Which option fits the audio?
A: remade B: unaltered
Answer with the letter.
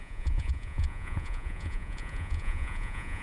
A